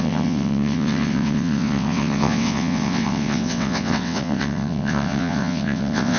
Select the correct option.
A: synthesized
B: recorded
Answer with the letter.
A